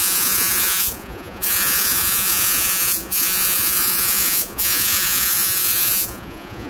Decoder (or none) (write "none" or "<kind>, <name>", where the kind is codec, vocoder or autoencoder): vocoder, Vocos